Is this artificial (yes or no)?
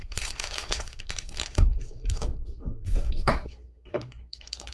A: yes